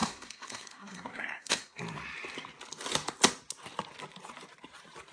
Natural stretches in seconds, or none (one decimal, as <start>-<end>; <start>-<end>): 1.8-5.1